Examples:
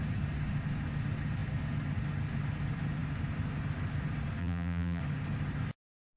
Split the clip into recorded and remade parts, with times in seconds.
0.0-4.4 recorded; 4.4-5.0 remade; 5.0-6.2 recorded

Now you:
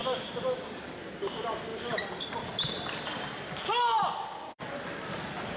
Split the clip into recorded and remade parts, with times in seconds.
0.0-1.7 recorded; 1.7-5.1 remade; 5.1-5.6 recorded

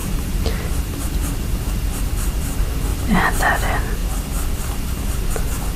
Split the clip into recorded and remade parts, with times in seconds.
0.0-0.7 remade; 0.7-2.9 recorded; 2.9-3.5 remade; 3.5-4.0 recorded; 4.0-5.8 remade